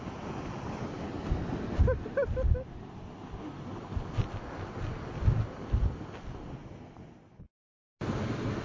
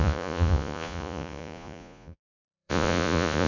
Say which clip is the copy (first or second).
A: second